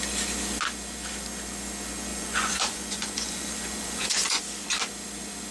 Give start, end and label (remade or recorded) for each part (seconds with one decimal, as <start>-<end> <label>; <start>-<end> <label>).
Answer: 0.0-2.1 recorded; 2.1-4.4 remade; 4.4-5.5 recorded